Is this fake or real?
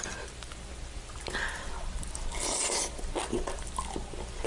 real